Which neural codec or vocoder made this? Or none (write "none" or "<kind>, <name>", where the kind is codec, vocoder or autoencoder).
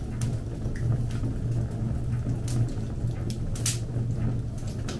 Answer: none